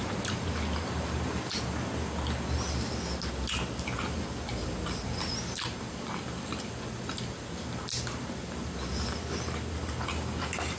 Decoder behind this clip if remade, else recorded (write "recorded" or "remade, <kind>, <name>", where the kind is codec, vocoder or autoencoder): recorded